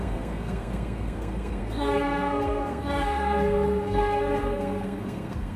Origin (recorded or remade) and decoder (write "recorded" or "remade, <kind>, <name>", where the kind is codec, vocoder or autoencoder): remade, codec, SNAC